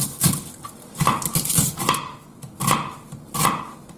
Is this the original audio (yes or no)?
yes